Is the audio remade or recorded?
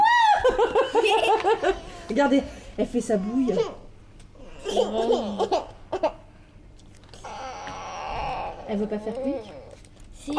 recorded